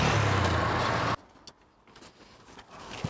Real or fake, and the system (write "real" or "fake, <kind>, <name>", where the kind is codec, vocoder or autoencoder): real